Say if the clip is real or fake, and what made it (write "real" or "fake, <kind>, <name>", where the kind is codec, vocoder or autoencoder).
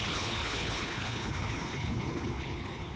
fake, codec, HILCodec